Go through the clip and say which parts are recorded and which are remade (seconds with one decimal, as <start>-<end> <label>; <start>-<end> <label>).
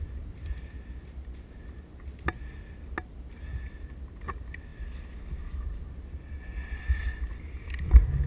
0.0-8.3 recorded